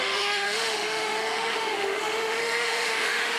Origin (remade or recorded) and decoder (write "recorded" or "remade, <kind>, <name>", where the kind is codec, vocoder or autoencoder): remade, autoencoder, DAC-VAE